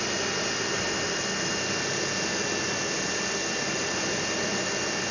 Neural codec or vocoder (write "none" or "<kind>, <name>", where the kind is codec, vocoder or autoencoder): none